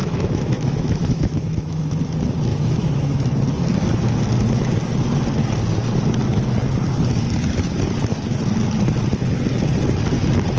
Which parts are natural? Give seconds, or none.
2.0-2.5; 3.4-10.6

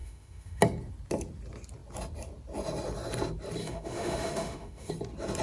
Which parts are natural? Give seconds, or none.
0.6-3.6; 4.9-5.4

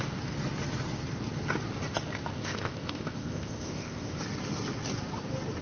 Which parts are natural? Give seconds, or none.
0.0-2.3; 4.2-5.6

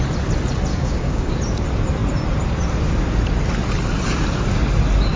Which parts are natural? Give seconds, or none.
0.0-0.7; 1.4-5.2

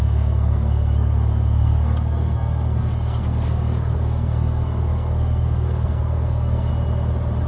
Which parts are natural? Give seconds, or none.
6.7-7.5